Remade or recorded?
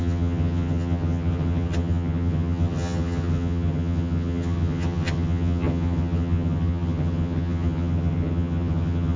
remade